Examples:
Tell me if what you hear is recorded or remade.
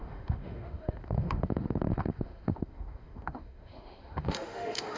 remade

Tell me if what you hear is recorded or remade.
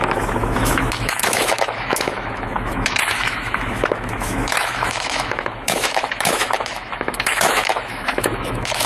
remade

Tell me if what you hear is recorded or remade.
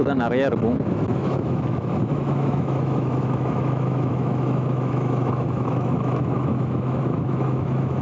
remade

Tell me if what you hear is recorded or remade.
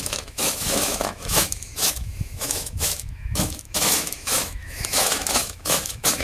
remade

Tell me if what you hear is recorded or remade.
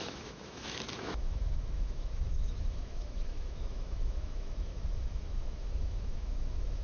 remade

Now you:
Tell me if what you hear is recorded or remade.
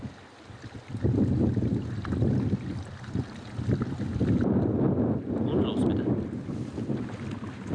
recorded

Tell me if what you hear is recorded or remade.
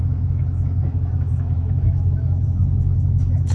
remade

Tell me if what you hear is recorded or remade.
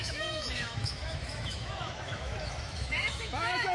remade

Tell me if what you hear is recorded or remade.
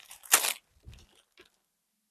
recorded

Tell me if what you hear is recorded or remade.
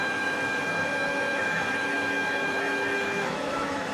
remade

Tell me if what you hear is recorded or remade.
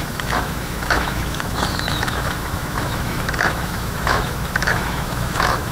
remade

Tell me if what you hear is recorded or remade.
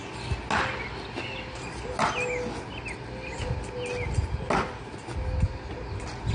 recorded